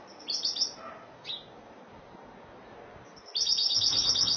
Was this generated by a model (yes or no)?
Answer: no